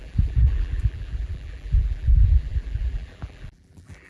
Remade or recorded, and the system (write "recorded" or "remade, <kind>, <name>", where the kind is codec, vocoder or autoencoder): remade, vocoder, BigVGAN v2